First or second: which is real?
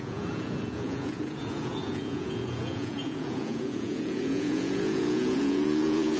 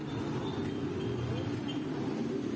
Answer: second